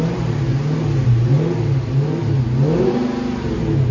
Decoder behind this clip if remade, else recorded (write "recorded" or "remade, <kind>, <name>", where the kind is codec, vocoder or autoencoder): recorded